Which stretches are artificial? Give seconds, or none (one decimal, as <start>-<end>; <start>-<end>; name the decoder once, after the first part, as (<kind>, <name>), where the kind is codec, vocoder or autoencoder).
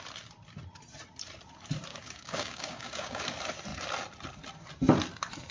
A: 1.9-3.2 (codec, DAC)